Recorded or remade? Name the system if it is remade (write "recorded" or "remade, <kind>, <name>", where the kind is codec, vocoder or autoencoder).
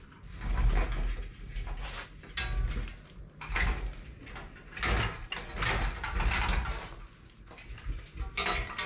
recorded